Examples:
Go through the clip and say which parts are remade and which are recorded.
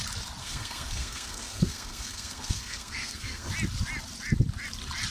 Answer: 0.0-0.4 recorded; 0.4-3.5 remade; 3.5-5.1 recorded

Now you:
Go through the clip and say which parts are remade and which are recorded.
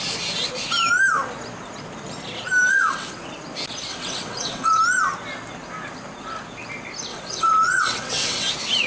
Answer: 0.0-2.7 recorded; 2.7-3.2 remade; 3.2-3.9 recorded; 3.9-4.8 remade; 4.8-7.1 recorded; 7.1-8.5 remade; 8.5-8.9 recorded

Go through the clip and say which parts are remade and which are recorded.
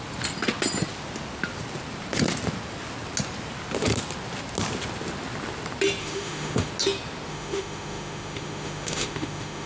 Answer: 0.0-6.0 recorded; 6.0-6.7 remade; 6.7-7.3 recorded; 7.3-9.7 remade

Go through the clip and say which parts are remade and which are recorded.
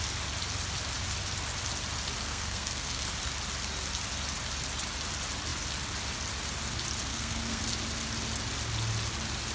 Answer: 0.0-2.3 recorded; 2.3-3.0 remade; 3.0-7.1 recorded; 7.1-7.6 remade; 7.6-9.5 recorded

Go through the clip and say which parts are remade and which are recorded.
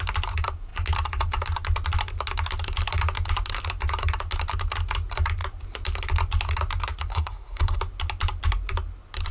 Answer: 0.0-7.1 recorded; 7.1-7.8 remade; 7.8-9.3 recorded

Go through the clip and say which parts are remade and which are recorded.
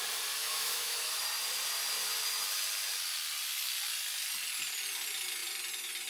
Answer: 0.0-0.4 recorded; 0.4-1.2 remade; 1.2-6.1 recorded